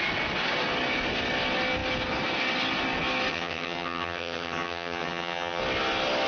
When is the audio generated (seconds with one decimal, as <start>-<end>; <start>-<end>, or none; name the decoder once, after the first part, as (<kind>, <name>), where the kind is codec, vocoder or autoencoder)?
3.3-5.6 (vocoder, HiFi-GAN)